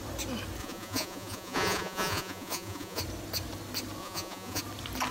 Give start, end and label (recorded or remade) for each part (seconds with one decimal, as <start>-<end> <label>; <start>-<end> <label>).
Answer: 0.0-0.6 recorded; 0.6-3.0 remade; 3.0-4.0 recorded; 4.0-4.6 remade; 4.6-5.1 recorded